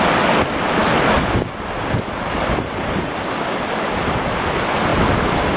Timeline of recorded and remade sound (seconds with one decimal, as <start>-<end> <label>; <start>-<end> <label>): 0.0-5.6 recorded